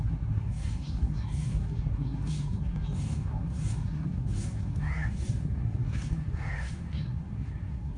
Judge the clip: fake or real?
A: fake